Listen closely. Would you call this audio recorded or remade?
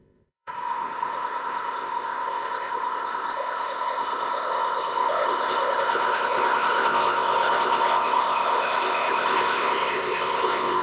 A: remade